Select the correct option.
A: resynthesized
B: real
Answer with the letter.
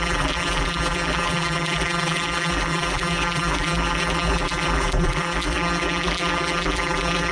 A